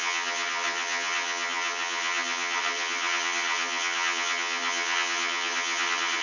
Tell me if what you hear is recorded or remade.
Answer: remade